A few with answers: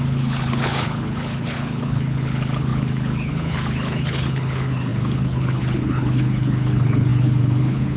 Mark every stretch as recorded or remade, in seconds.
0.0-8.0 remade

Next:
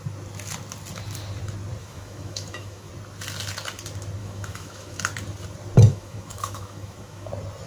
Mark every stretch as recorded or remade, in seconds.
0.0-1.8 recorded; 1.8-2.9 remade; 2.9-4.2 recorded; 4.2-5.0 remade; 5.0-5.9 recorded; 5.9-7.3 remade; 7.3-7.7 recorded

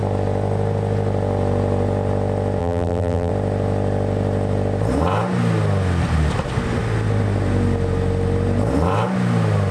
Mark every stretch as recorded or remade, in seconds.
0.0-2.6 recorded; 2.6-3.3 remade; 3.3-9.7 recorded

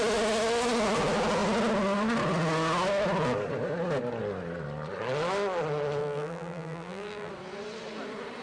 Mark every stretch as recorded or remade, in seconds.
0.0-6.0 recorded; 6.0-7.3 remade; 7.3-8.4 recorded

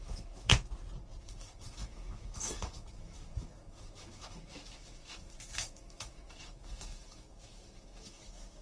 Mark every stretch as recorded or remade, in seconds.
0.0-0.5 remade; 0.5-1.2 recorded; 1.2-8.6 remade

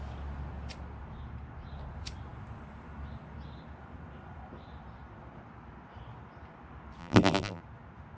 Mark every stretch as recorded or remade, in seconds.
0.0-7.0 recorded; 7.0-7.6 remade; 7.6-8.2 recorded

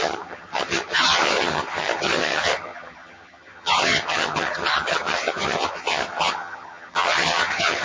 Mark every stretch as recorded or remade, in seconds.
0.0-7.8 remade